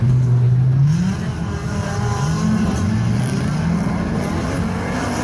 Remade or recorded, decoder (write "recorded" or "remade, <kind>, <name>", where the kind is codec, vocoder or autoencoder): recorded